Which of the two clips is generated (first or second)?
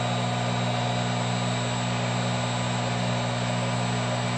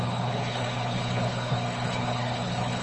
second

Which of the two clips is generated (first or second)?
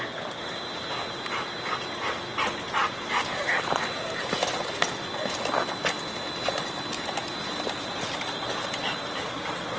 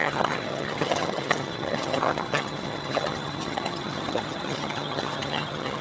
second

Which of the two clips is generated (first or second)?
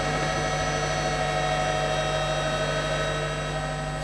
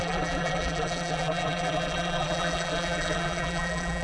second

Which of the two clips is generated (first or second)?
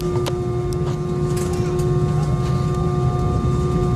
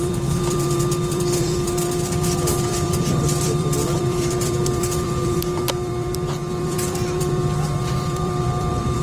second